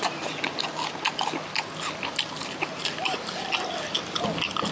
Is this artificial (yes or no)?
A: no